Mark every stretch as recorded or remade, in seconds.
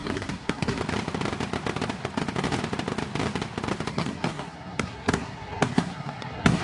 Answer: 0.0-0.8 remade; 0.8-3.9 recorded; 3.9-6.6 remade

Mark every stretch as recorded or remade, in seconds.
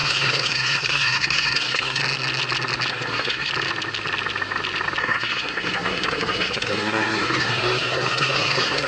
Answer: 0.0-2.0 remade; 2.0-2.9 recorded; 2.9-3.5 remade; 3.5-5.0 recorded; 5.0-8.9 remade